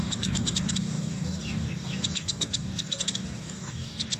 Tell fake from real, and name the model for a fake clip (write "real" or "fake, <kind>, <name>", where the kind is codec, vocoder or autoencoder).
fake, codec, DAC